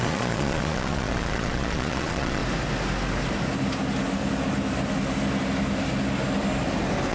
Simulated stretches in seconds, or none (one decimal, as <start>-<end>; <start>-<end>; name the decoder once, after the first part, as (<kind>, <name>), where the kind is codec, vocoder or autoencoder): 0.0-2.4 (vocoder, Vocos)